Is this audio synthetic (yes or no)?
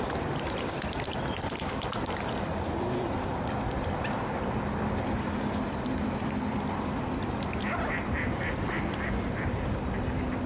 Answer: yes